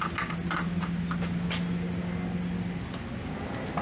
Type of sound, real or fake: real